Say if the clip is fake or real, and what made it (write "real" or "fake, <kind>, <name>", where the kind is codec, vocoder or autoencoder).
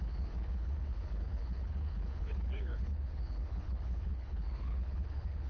fake, codec, HILCodec